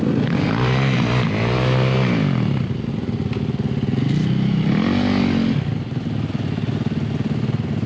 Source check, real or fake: real